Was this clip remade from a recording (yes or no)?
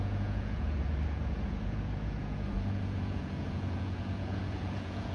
yes